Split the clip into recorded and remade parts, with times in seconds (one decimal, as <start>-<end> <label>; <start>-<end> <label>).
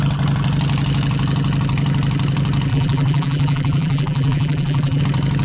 0.0-2.7 recorded; 2.7-5.0 remade; 5.0-5.4 recorded